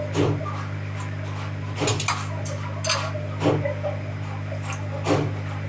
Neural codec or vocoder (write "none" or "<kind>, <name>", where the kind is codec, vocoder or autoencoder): none